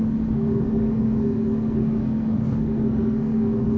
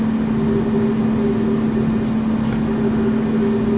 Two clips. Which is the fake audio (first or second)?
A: first